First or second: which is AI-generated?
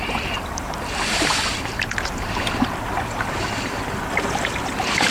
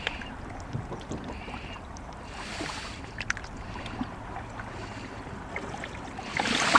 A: first